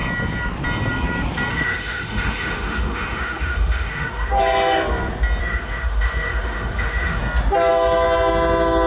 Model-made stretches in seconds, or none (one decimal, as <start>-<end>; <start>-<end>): 1.5-4.4; 5.4-7.2

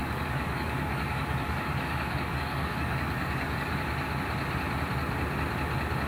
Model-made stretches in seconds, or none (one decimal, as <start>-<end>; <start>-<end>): 0.0-3.7

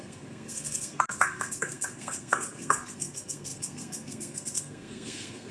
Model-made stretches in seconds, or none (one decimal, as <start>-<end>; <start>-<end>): 0.0-5.5

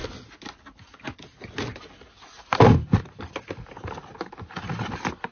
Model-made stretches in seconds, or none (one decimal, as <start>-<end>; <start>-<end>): none